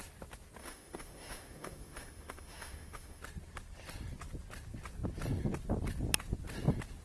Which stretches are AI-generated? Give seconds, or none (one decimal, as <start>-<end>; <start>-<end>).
0.6-3.2